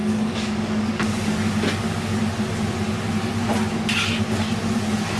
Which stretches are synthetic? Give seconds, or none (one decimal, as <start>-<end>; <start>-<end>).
0.0-1.5